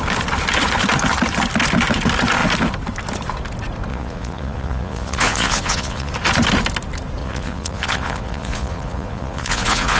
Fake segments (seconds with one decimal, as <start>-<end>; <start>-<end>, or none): 3.9-6.1; 7.2-10.0